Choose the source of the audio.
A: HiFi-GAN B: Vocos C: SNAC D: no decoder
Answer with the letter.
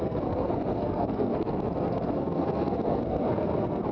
C